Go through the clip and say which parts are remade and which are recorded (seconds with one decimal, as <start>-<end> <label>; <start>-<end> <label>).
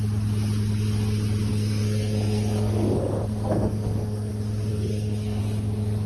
0.0-1.5 recorded; 1.5-4.3 remade; 4.3-4.7 recorded; 4.7-5.4 remade; 5.4-6.1 recorded